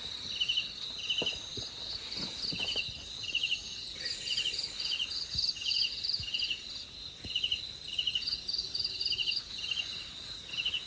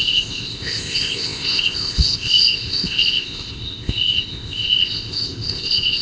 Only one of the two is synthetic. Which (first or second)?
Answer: second